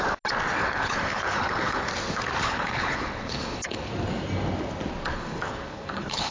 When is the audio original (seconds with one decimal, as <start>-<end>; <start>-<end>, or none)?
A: 0.0-0.6; 1.9-2.4; 3.9-5.1